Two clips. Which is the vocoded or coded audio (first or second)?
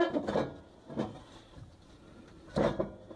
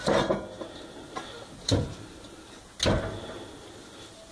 first